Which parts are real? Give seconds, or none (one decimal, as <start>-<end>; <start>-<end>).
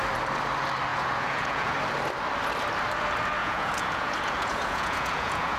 0.0-0.9; 1.7-3.4